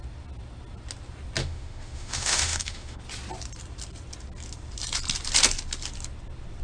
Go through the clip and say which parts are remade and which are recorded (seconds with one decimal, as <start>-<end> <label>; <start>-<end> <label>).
0.0-1.4 recorded; 1.4-3.0 remade; 3.0-6.6 recorded